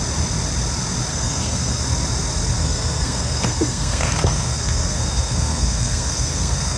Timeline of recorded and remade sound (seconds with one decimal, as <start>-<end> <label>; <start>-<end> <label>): 0.0-1.1 recorded; 1.1-1.8 remade; 1.8-2.6 recorded; 2.6-6.8 remade